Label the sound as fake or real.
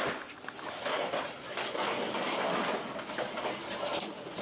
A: real